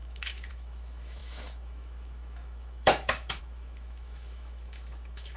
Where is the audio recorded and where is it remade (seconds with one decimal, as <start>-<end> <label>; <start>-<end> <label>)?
0.0-5.4 remade